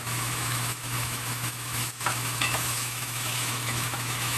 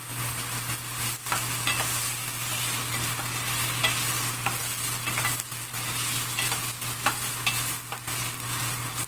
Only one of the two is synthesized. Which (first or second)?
first